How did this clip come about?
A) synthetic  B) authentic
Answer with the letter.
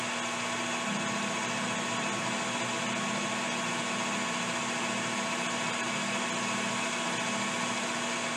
B